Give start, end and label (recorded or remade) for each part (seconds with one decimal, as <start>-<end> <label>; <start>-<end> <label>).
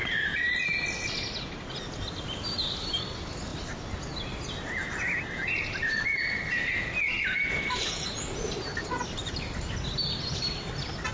0.0-11.1 recorded